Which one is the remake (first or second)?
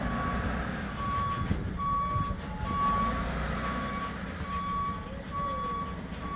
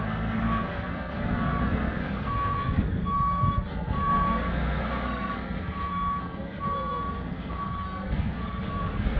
second